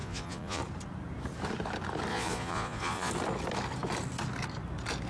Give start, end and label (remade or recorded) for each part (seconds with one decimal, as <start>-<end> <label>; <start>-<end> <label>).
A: 0.0-0.6 remade; 0.6-2.1 recorded; 2.1-3.1 remade; 3.1-5.1 recorded